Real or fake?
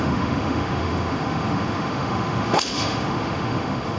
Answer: fake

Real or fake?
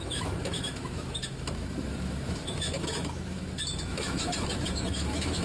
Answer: fake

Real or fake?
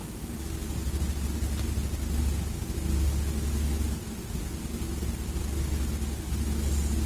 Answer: real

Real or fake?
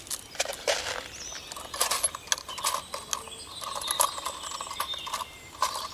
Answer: real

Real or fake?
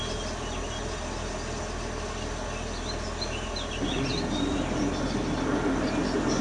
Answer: real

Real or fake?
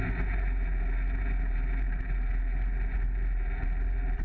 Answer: real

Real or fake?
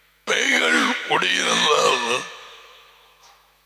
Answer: fake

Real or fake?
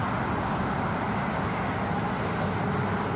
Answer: real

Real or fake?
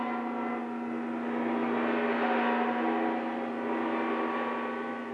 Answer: real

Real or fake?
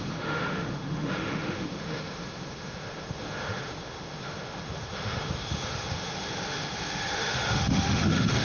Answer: fake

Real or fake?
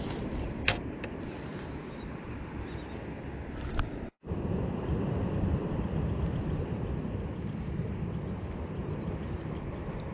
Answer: real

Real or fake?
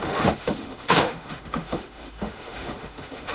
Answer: fake